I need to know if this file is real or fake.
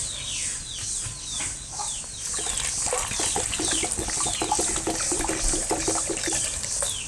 real